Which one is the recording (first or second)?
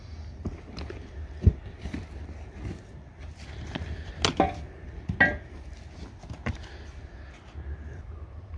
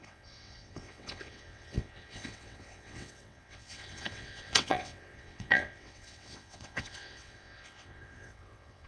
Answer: first